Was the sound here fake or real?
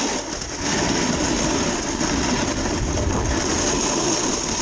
real